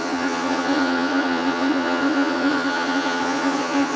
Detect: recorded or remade remade